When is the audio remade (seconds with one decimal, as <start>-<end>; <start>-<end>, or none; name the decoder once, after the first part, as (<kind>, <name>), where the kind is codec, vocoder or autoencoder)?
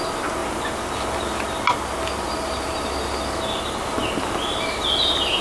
none